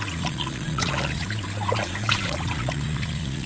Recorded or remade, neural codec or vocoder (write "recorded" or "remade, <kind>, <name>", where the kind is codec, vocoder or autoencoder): remade, vocoder, Vocos